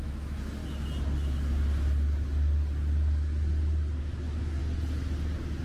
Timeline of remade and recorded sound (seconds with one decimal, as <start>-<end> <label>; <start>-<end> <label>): 0.0-0.6 remade; 0.6-4.0 recorded; 4.0-4.6 remade; 4.6-5.6 recorded